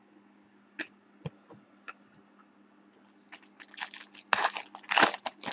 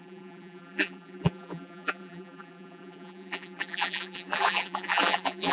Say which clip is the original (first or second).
first